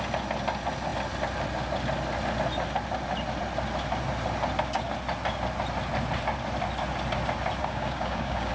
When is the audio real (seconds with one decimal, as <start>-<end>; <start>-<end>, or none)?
0.0-7.6